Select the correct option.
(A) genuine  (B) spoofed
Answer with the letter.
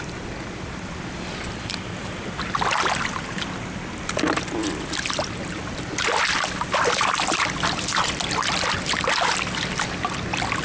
A